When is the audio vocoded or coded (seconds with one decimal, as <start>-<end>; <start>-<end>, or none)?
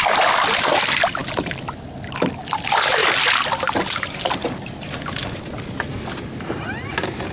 none